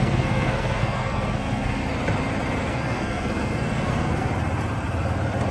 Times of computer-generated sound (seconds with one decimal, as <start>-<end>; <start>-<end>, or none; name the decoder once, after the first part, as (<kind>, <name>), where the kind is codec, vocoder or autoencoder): 0.0-1.8 (codec, SNAC); 2.6-4.3